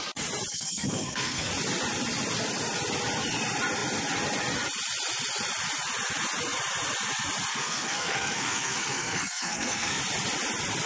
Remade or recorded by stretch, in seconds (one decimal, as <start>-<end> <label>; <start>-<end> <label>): 0.0-0.5 recorded; 0.5-1.5 remade; 1.5-7.5 recorded; 7.5-10.0 remade; 10.0-10.9 recorded